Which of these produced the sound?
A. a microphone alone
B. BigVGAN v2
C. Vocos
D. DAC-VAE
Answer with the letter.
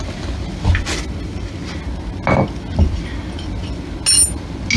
A